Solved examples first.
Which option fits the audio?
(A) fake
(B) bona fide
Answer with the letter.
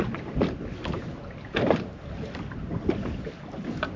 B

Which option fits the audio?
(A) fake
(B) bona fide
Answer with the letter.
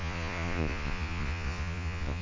A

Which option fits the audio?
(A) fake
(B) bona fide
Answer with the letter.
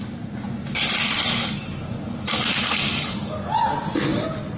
B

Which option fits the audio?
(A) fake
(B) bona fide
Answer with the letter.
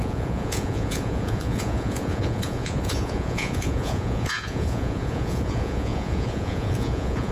A